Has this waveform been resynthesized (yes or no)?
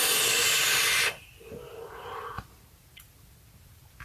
no